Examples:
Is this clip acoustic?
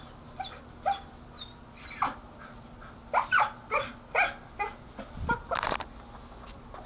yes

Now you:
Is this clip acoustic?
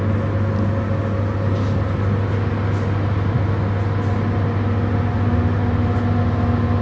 yes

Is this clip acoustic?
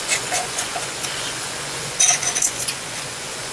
no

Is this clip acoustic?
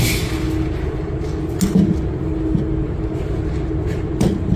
yes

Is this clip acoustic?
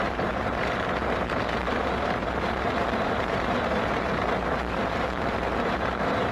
no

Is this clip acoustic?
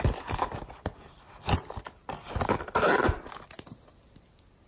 yes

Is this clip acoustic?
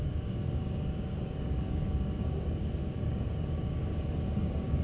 no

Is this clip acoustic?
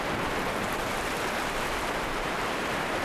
no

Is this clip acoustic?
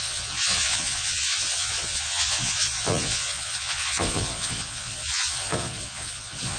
no